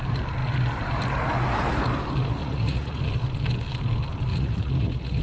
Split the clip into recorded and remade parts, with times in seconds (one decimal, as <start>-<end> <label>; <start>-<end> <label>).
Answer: 0.0-2.4 recorded; 2.4-3.0 remade; 3.0-4.3 recorded; 4.3-5.2 remade